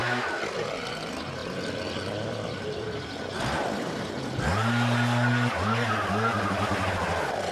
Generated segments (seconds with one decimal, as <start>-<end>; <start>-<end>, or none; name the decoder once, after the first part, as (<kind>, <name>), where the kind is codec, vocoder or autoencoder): none